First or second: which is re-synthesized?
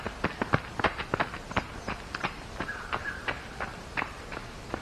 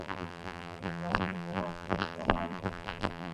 second